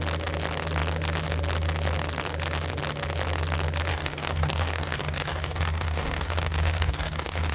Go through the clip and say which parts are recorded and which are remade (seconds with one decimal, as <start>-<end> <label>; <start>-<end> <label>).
0.0-3.9 recorded; 3.9-7.5 remade